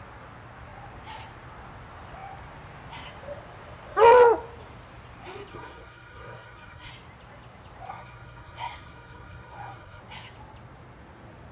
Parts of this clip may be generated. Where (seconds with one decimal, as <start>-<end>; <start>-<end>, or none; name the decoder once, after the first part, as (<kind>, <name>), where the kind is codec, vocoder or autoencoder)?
5.5-6.9 (codec, SNAC); 7.9-10.0